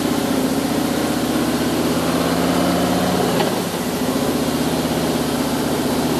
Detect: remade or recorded recorded